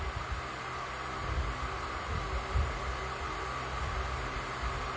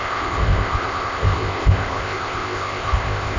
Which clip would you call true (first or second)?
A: first